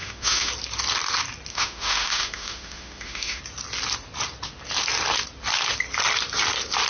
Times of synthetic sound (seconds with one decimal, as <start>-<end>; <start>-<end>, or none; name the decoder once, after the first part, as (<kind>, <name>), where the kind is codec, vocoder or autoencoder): 0.0-0.5 (autoencoder, DAC-VAE); 1.5-3.4